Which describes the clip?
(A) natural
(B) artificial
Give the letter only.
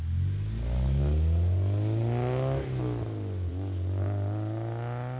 A